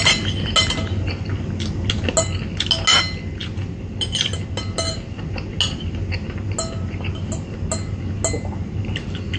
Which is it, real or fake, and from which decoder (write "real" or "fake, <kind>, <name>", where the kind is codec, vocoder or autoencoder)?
real